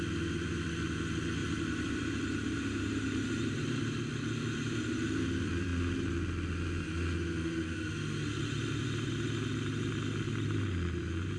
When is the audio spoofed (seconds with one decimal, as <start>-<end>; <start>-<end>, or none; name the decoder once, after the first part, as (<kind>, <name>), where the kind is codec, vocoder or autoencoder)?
1.4-4.0 (vocoder, BigVGAN v2)